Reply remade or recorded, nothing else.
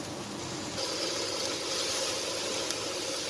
recorded